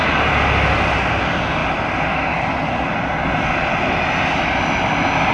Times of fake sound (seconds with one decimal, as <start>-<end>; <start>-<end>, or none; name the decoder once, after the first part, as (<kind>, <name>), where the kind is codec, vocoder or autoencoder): none